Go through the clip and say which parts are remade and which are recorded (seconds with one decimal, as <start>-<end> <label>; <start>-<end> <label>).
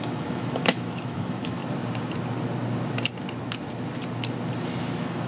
0.0-1.6 remade; 1.6-4.8 recorded; 4.8-5.3 remade